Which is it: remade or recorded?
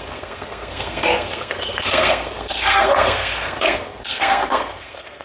remade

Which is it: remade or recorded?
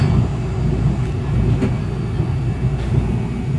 recorded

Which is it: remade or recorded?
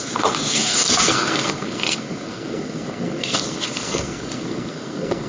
remade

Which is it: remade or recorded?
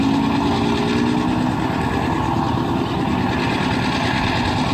recorded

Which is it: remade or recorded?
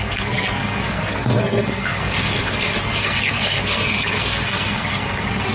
remade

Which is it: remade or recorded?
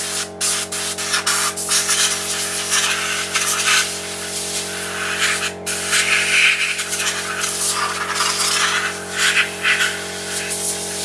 recorded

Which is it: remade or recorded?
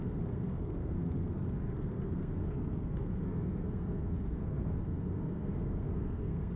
remade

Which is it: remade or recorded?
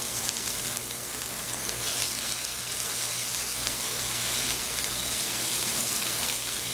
remade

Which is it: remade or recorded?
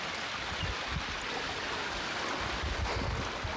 recorded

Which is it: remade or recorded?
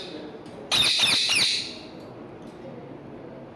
recorded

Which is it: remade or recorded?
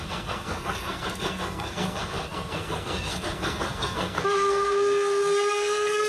remade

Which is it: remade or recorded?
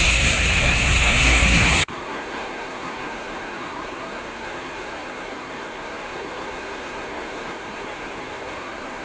remade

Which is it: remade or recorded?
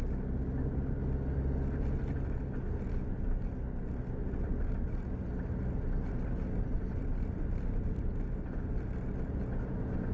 recorded